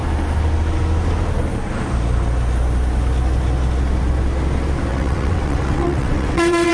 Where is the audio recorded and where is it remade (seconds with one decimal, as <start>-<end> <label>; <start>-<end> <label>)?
0.0-4.9 recorded; 4.9-6.7 remade